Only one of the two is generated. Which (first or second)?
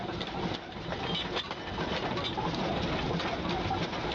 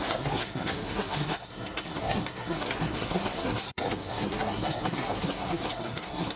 second